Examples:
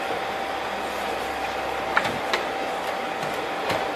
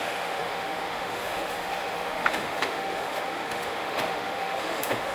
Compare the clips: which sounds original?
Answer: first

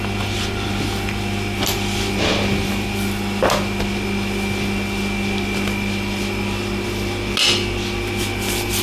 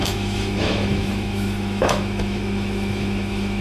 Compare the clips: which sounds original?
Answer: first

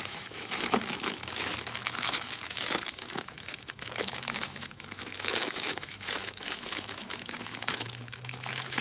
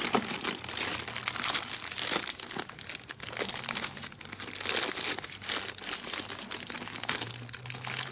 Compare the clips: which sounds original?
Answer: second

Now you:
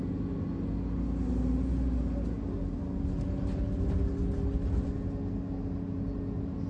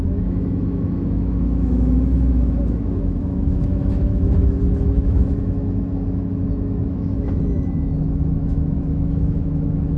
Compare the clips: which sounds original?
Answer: first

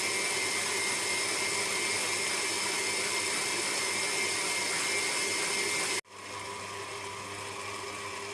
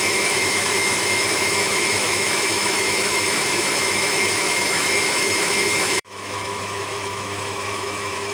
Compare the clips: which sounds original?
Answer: first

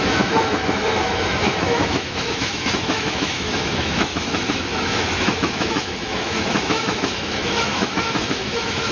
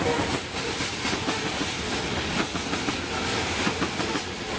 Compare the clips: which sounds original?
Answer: second